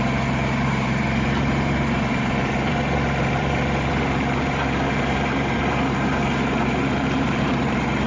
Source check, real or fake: fake